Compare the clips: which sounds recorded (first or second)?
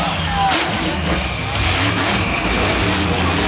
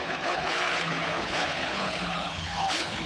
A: first